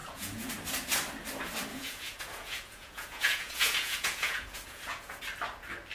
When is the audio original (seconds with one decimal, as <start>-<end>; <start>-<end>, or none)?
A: 0.5-1.7; 5.2-5.9